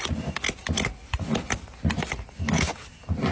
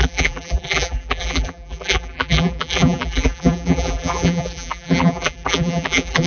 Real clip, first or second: first